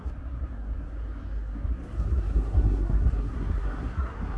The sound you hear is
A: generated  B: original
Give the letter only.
A